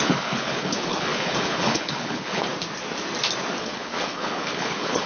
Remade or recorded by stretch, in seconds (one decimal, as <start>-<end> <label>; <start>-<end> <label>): 0.0-2.5 remade; 2.5-3.6 recorded; 3.6-5.1 remade